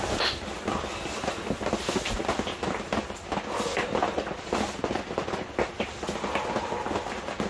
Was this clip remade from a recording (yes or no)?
no